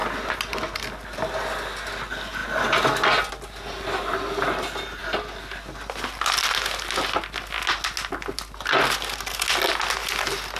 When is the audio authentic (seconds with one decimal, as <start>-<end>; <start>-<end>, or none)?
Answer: 0.0-10.6